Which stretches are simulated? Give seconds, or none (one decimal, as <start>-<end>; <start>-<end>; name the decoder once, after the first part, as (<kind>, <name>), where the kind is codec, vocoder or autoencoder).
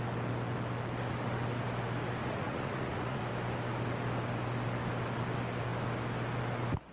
2.2-3.2 (vocoder, Vocos)